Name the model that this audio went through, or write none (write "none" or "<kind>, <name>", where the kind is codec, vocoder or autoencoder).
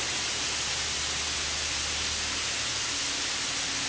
none